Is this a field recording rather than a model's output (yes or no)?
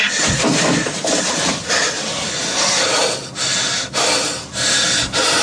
yes